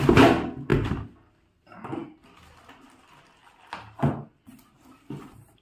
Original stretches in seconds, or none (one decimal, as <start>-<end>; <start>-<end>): 0.0-5.6